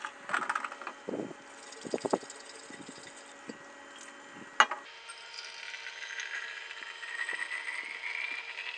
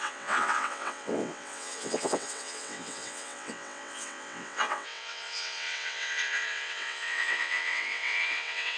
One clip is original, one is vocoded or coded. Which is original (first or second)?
first